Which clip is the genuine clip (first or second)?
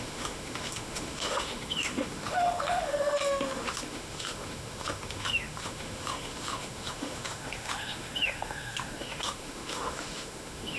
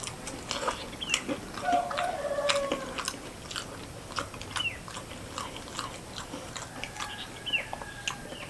second